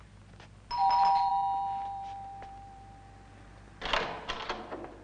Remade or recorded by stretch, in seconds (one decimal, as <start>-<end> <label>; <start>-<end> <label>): 0.0-5.0 recorded